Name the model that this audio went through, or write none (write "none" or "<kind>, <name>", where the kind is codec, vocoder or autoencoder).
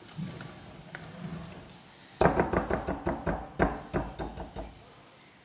none